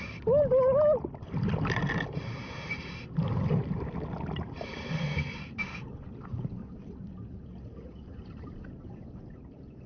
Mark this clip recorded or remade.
recorded